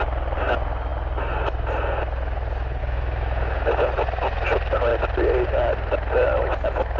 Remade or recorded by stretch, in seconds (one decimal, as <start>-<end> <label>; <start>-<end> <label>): 0.0-2.8 recorded; 2.8-3.7 remade; 3.7-7.0 recorded